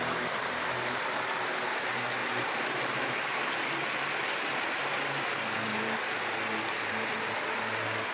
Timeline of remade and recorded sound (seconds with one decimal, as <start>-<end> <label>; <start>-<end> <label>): 0.0-2.2 recorded; 2.2-4.8 remade; 4.8-5.7 recorded; 5.7-7.2 remade; 7.2-8.1 recorded